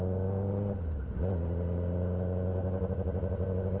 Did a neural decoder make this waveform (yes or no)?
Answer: no